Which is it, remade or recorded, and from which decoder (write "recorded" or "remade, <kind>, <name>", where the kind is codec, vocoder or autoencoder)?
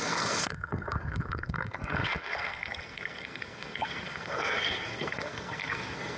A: remade, codec, SNAC